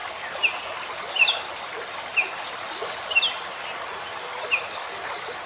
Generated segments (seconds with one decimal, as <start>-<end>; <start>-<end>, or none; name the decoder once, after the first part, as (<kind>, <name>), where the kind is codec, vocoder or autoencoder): none